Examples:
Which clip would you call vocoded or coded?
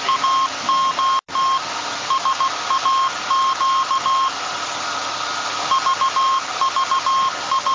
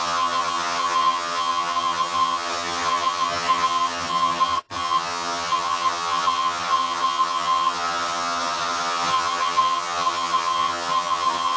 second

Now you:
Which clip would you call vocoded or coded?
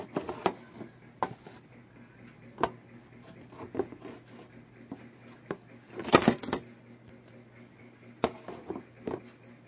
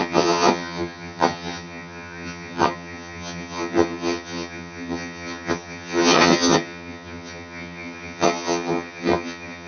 second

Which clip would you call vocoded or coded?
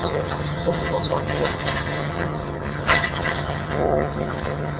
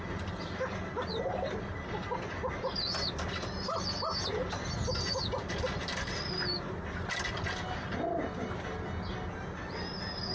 first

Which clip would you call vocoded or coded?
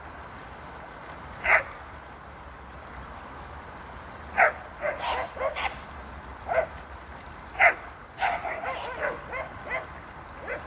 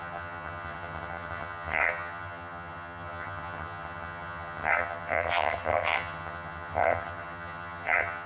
second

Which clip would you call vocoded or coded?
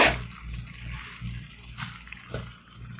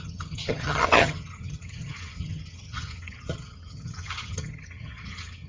second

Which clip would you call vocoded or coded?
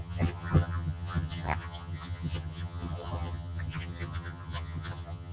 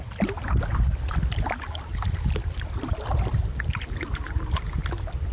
first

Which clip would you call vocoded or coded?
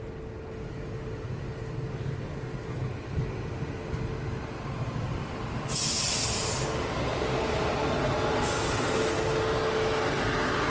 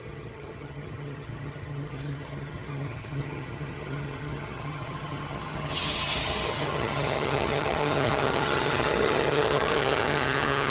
second